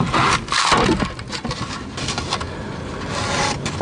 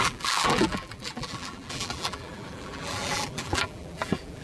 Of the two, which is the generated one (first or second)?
second